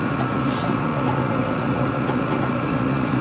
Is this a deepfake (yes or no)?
yes